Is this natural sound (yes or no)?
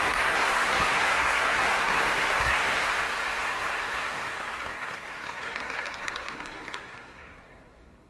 no